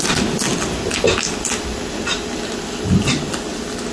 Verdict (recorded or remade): recorded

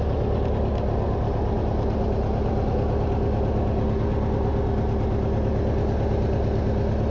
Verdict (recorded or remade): recorded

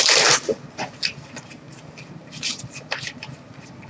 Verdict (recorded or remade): recorded